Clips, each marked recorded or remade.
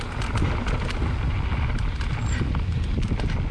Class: recorded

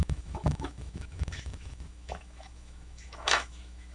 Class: remade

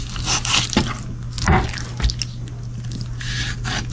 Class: recorded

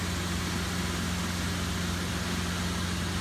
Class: recorded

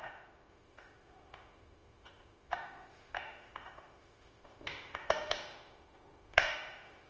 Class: remade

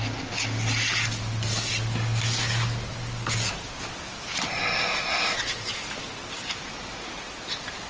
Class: recorded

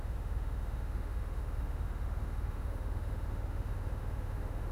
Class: remade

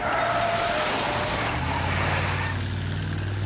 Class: recorded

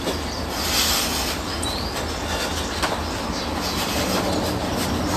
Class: recorded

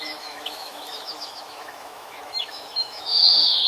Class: remade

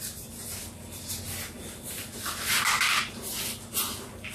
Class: recorded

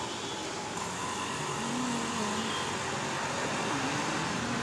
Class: recorded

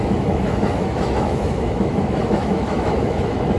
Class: remade